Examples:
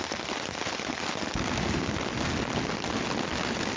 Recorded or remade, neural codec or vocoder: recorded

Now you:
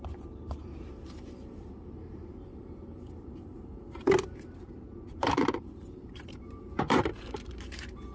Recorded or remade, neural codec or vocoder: remade, vocoder, BigVGAN v2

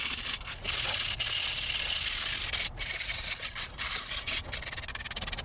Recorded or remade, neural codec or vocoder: recorded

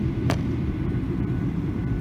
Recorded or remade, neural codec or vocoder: remade, vocoder, BigVGAN v2